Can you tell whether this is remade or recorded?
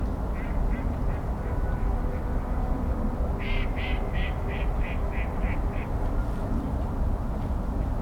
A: recorded